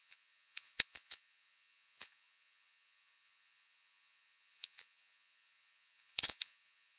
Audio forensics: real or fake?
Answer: fake